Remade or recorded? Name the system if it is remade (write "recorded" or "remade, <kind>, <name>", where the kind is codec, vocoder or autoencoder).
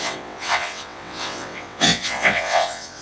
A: remade, vocoder, WaveNeXt